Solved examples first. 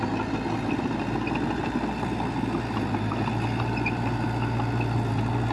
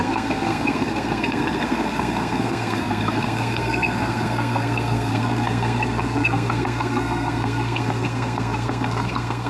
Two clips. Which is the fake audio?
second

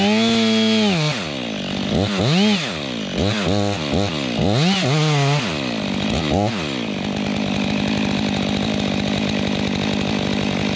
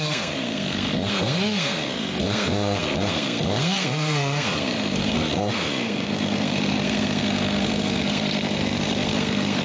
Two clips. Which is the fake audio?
second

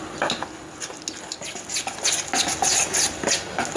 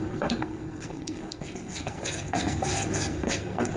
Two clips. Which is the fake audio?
second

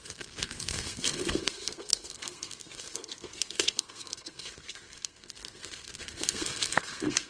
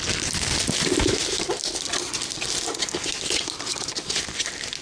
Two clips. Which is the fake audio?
first